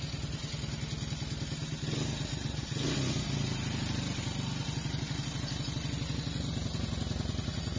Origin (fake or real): real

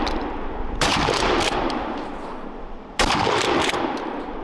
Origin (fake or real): real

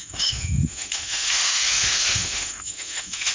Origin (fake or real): fake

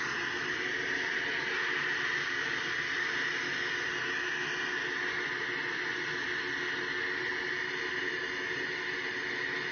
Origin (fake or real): real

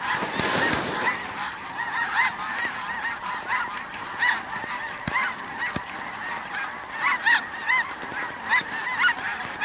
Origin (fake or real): fake